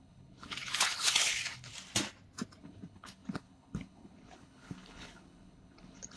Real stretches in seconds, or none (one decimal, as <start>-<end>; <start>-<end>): 1.7-2.6